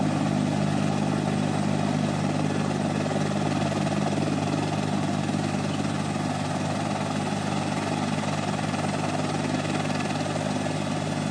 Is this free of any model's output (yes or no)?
yes